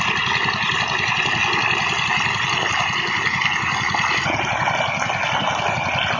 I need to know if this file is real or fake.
real